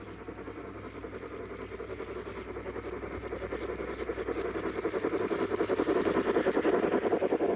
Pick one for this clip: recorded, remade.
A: recorded